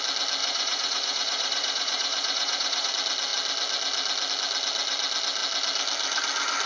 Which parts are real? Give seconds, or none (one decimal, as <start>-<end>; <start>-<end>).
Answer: 0.0-0.4; 2.9-6.7